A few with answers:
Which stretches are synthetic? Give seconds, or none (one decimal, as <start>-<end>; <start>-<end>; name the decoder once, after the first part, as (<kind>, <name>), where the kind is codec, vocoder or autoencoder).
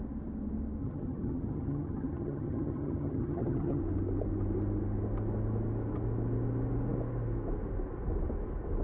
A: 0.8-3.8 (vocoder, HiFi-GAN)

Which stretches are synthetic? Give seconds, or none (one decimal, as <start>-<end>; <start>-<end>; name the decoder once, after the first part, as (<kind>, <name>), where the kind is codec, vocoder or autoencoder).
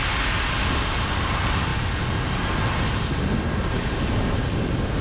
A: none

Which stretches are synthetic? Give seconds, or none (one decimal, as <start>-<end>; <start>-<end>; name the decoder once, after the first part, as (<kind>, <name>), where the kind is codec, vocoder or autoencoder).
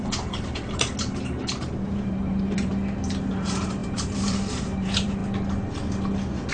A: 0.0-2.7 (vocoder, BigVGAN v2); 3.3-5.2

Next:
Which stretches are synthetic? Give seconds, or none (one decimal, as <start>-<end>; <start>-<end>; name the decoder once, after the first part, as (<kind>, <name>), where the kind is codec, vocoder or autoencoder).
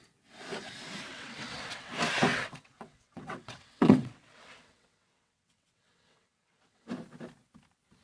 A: 1.1-1.9 (vocoder, WaveNeXt); 2.3-6.9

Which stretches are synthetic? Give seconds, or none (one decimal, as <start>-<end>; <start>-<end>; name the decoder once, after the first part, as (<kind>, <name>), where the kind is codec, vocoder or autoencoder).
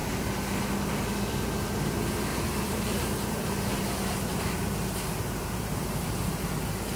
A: 2.3-6.5 (vocoder, BigVGAN v2)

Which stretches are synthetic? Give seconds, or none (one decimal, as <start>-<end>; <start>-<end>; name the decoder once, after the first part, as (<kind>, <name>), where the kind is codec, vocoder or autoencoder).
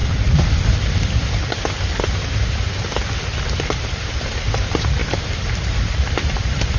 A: 4.1-6.8 (vocoder, BigVGAN v2)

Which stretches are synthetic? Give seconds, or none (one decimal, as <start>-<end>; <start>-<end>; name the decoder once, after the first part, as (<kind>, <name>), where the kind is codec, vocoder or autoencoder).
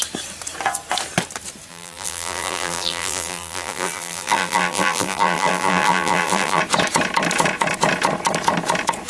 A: 1.7-6.6 (vocoder, BigVGAN v2)